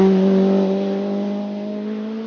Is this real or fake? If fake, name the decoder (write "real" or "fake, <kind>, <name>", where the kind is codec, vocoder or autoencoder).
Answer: real